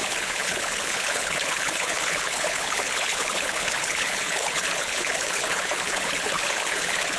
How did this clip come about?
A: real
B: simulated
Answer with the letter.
B